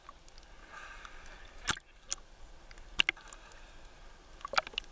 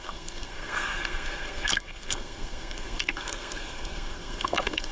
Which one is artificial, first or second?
second